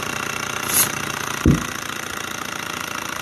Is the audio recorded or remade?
recorded